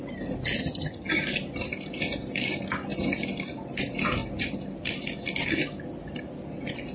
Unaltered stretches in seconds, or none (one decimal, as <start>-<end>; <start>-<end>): 0.0-0.6; 1.2-6.9